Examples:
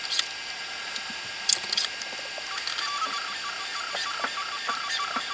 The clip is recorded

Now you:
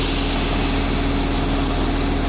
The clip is recorded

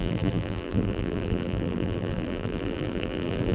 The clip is remade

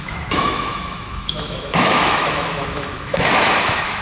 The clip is remade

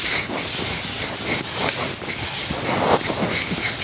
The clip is recorded